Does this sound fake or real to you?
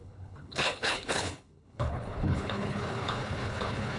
fake